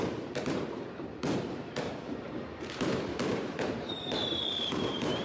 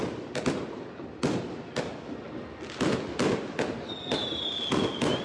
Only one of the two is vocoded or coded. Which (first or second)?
first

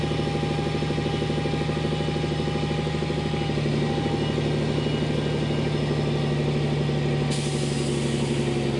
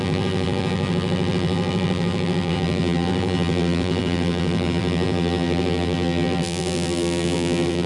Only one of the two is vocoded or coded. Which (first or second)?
second